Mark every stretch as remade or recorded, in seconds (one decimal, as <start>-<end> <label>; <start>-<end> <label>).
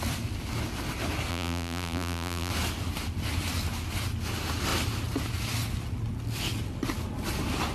0.0-1.3 recorded; 1.3-2.5 remade; 2.5-7.7 recorded